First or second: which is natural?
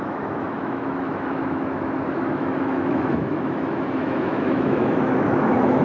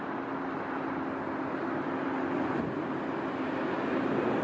second